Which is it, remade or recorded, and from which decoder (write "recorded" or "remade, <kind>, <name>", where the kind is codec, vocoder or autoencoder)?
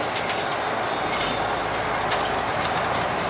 recorded